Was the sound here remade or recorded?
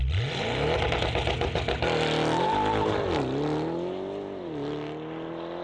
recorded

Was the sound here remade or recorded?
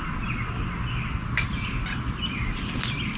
recorded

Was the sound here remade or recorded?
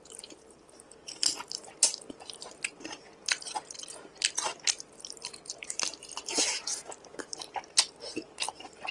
remade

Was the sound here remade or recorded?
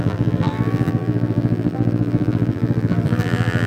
remade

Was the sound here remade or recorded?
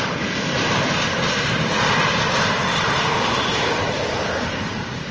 remade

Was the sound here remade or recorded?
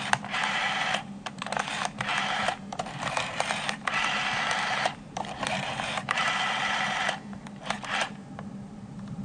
remade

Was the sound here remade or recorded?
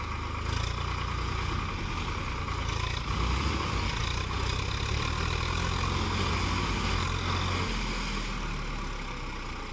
recorded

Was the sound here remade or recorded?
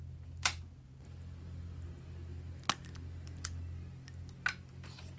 recorded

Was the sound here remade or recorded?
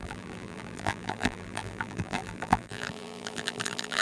remade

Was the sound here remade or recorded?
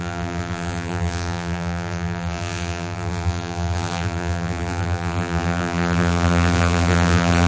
remade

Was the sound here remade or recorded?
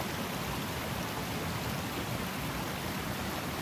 recorded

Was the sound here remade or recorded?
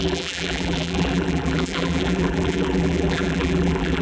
remade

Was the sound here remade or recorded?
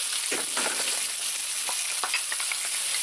recorded